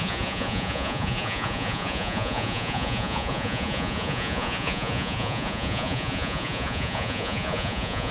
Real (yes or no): no